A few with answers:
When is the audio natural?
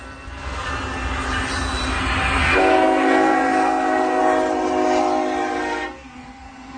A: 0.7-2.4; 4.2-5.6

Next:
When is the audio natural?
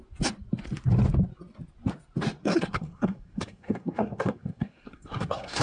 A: 0.0-2.4